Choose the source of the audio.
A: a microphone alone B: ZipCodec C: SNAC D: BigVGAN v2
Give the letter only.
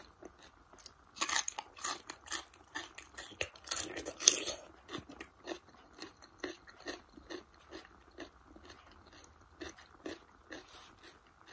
A